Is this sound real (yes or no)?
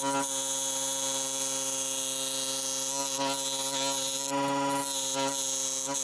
yes